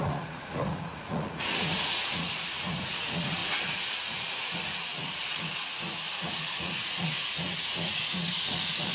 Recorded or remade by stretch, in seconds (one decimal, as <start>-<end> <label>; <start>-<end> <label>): 0.0-8.9 remade